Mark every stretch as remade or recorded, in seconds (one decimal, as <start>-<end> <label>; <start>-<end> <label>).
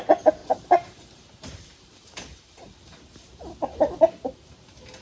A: 0.0-0.4 recorded; 0.4-3.4 remade; 3.4-5.0 recorded